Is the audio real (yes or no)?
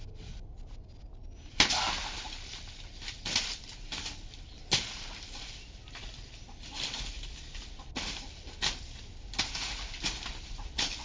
yes